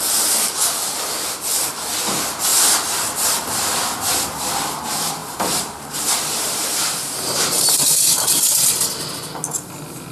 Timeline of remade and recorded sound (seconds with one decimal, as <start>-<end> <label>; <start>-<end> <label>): 0.0-2.5 recorded; 2.5-3.8 remade; 3.8-5.2 recorded; 5.2-9.0 remade; 9.0-10.1 recorded